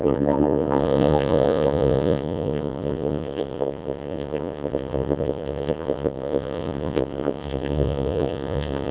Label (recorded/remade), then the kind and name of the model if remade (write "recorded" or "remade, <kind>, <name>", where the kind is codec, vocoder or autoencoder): remade, vocoder, Vocos